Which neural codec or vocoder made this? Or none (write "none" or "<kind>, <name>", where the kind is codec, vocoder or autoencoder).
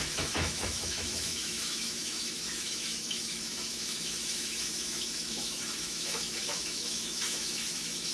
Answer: autoencoder, DAC-VAE